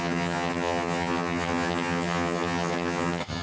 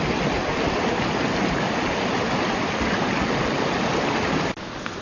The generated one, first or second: first